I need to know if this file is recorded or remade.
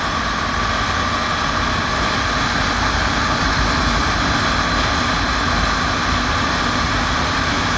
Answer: recorded